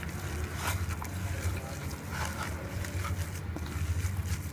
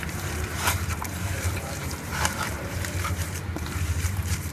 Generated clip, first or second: second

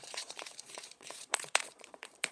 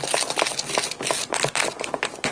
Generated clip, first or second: first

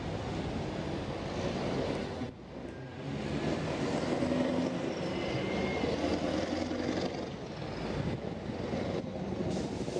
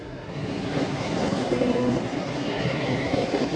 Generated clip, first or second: second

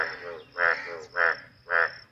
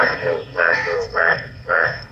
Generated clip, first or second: second